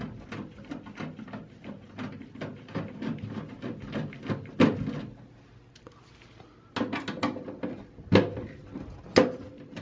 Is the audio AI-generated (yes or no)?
no